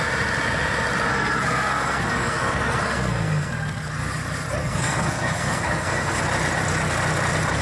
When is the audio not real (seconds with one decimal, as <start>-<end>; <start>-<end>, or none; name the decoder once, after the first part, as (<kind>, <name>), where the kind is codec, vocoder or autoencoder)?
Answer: 1.1-3.5 (codec, SNAC); 4.6-6.2